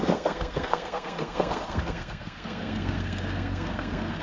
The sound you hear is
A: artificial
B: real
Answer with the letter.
A